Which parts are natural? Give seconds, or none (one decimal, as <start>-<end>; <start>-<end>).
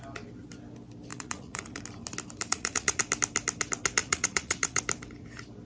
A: 0.0-1.1; 1.8-2.5; 3.0-4.0; 4.8-5.6